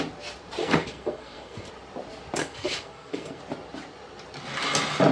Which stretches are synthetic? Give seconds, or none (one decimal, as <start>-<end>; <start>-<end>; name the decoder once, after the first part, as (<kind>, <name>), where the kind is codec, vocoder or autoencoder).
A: 0.6-1.7 (codec, SNAC); 2.4-3.4